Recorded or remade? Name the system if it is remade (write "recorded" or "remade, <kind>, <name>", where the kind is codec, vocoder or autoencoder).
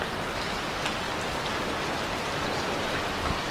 recorded